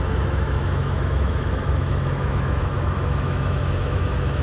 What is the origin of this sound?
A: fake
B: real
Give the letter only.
A